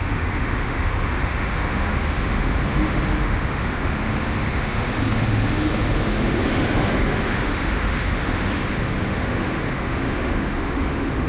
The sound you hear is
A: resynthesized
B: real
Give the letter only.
A